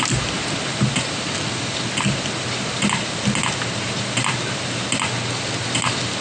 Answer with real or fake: real